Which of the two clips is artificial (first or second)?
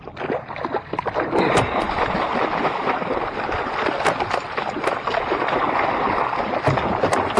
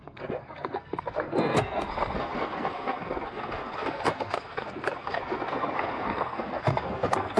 second